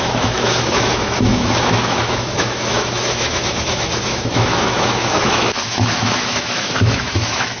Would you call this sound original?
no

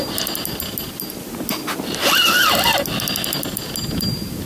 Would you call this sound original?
yes